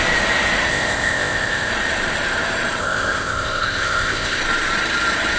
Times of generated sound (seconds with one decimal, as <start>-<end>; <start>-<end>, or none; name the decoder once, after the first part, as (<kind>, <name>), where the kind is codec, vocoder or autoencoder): 0.7-1.7 (codec, ZipCodec); 2.8-4.4